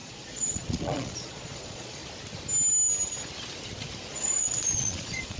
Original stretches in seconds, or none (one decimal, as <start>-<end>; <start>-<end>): 2.0-4.1